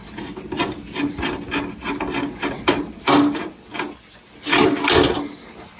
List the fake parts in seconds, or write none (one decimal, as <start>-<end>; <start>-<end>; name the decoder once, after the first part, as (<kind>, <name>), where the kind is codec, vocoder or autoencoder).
none